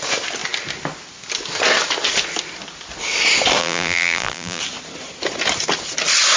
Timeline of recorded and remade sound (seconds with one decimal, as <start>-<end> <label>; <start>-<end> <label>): 0.0-3.6 recorded; 3.6-4.6 remade; 4.6-6.4 recorded